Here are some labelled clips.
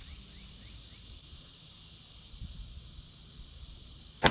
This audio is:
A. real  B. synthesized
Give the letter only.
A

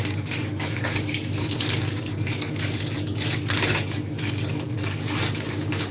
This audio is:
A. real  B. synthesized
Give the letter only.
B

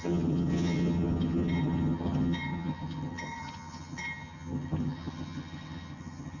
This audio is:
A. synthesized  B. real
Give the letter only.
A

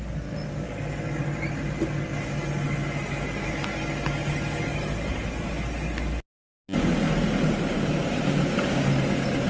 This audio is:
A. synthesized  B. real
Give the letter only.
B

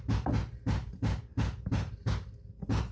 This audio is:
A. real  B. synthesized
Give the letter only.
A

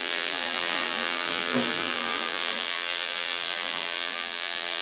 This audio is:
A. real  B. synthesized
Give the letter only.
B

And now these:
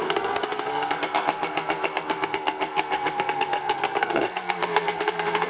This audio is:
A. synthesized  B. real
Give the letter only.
A